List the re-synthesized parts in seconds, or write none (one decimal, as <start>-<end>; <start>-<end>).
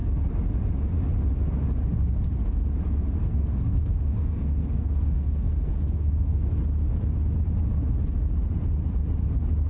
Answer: 3.2-6.6